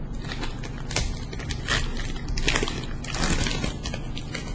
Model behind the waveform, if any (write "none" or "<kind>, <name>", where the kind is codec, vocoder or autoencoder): none